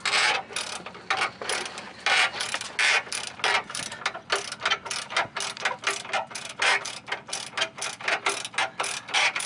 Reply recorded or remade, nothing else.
recorded